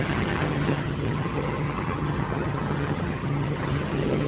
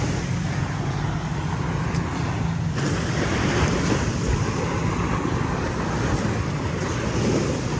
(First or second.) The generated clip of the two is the first